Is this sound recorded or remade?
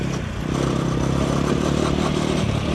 recorded